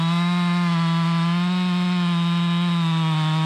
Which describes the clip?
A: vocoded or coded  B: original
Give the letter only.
B